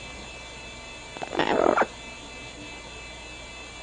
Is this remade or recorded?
recorded